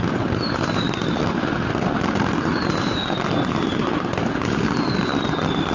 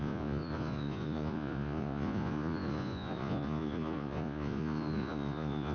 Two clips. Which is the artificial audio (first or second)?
second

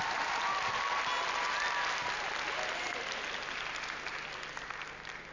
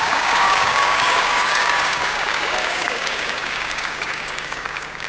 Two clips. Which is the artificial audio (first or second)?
second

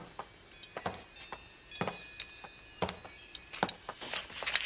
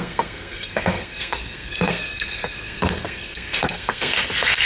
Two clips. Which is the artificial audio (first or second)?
second